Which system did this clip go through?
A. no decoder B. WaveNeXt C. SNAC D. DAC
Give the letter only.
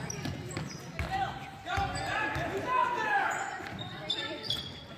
A